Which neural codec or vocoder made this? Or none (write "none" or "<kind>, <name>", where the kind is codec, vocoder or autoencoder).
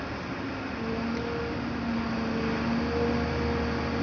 none